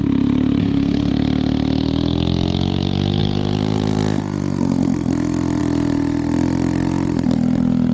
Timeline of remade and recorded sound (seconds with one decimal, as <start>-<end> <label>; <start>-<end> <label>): 0.0-0.6 recorded; 0.6-1.1 remade; 1.1-7.9 recorded